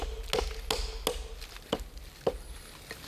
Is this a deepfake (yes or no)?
no